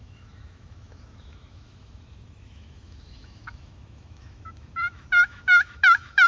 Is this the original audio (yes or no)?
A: no